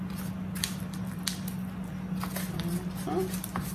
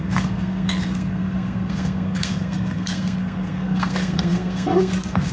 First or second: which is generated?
second